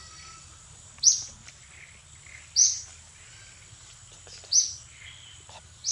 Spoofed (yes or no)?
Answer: no